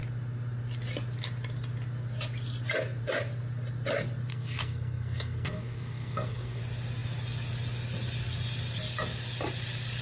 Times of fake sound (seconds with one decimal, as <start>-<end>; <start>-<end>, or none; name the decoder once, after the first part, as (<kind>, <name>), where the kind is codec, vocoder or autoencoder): 4.3-6.6 (codec, SNAC)